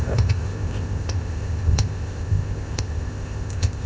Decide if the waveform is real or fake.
fake